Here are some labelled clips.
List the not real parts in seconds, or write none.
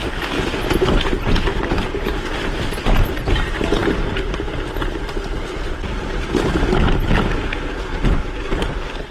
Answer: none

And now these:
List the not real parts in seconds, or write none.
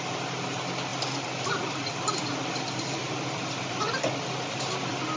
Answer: 0.9-4.0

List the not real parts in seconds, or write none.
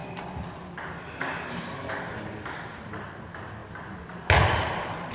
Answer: 0.0-3.6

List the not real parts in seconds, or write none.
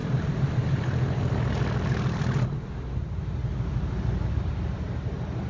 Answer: 0.0-2.4; 3.4-5.1